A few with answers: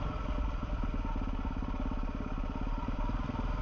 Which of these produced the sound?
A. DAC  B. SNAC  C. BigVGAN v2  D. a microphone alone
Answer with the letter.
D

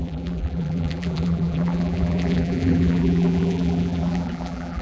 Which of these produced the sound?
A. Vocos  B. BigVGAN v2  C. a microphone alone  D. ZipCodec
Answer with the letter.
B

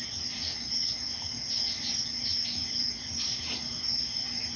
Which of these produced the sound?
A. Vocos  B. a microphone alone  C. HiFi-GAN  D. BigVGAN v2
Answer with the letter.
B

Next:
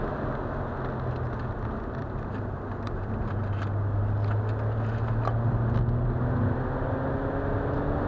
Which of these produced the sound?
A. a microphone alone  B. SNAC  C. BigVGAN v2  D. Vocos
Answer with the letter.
A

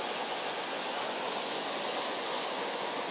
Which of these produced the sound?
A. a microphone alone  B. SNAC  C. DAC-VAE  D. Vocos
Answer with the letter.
D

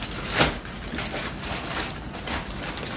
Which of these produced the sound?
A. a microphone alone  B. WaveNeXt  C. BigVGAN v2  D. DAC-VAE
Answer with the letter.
A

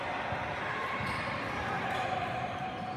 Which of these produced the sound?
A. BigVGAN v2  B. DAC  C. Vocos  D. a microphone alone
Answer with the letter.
A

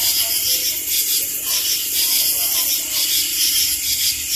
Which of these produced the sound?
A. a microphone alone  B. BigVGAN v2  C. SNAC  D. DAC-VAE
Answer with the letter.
A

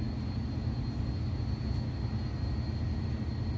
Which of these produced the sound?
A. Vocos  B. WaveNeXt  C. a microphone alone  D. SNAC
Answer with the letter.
C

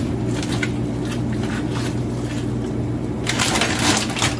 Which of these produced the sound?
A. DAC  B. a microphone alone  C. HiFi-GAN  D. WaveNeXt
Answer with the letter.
B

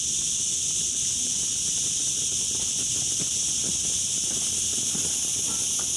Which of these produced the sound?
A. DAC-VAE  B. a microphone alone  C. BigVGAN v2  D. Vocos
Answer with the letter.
B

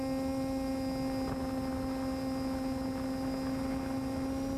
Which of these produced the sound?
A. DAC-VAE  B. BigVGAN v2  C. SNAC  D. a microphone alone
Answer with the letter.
D